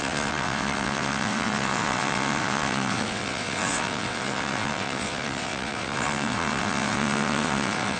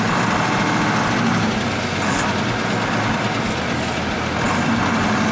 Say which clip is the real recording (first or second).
second